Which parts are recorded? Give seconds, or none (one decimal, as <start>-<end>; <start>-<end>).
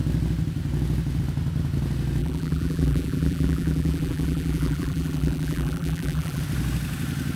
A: 0.0-2.2; 6.4-7.4